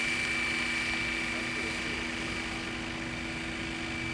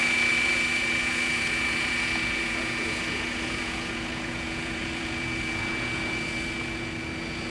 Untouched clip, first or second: first